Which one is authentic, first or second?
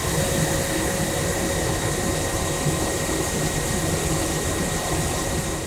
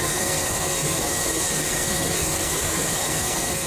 first